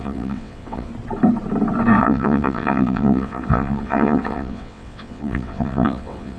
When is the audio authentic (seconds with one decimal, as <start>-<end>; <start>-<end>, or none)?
0.9-2.0

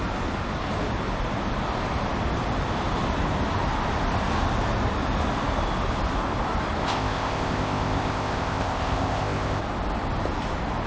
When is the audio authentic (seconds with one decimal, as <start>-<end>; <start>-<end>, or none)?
0.0-6.8; 9.6-10.9